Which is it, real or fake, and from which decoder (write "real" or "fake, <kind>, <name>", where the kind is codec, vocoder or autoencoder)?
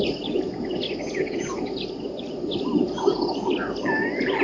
real